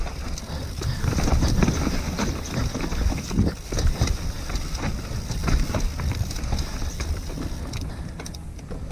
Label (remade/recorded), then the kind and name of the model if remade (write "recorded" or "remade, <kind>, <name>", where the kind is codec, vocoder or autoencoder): recorded